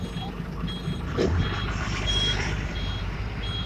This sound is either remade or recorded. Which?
remade